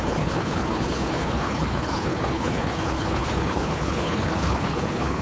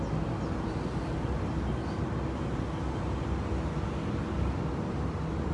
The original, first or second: second